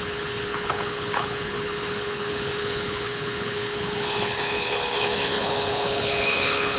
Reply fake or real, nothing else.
fake